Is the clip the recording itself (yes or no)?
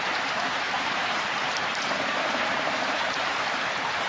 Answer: no